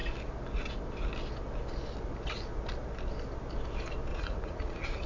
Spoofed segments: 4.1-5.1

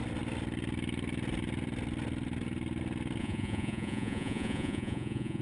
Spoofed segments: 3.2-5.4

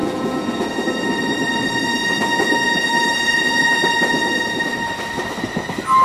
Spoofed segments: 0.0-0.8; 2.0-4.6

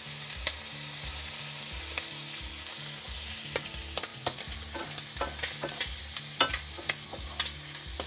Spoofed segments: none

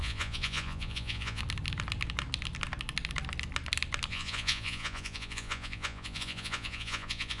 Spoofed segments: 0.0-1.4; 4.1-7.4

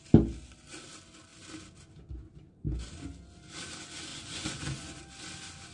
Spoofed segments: 4.1-5.0

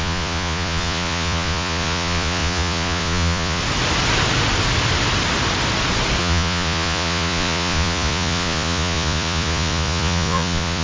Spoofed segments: 0.0-3.6; 6.2-10.8

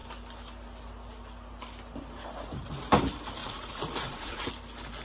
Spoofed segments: 3.4-4.5